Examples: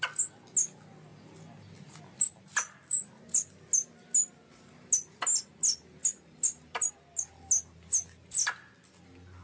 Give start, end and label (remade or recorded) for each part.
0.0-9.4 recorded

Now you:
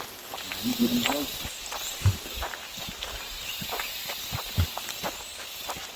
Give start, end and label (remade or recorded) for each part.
0.0-0.7 recorded; 0.7-1.4 remade; 1.4-2.1 recorded; 2.1-6.0 remade

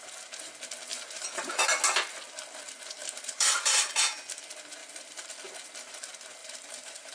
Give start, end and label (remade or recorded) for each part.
0.0-0.9 recorded; 0.9-1.6 remade; 1.6-3.0 recorded; 3.0-3.9 remade; 3.9-6.4 recorded; 6.4-7.1 remade